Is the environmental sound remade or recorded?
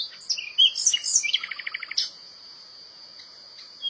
recorded